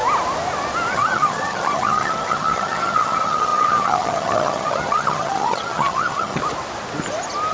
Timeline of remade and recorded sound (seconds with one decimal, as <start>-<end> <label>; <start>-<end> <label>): 0.0-0.9 recorded; 0.9-6.4 remade; 6.4-7.5 recorded